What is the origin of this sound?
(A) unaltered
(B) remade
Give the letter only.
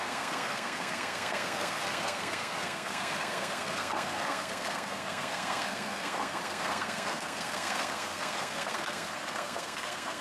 B